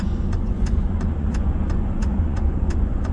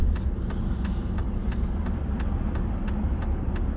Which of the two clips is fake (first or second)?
first